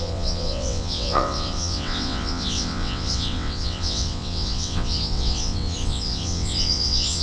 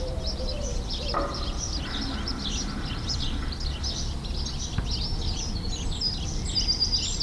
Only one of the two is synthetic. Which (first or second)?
first